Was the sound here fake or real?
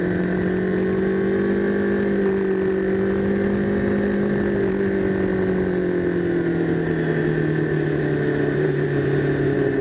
real